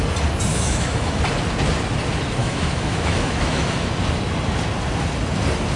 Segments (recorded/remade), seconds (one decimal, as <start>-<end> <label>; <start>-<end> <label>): 0.0-0.5 recorded; 0.5-1.2 remade; 1.2-2.4 recorded; 2.4-3.9 remade; 3.9-5.8 recorded